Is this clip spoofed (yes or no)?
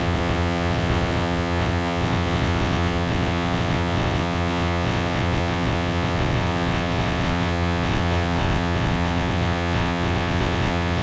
yes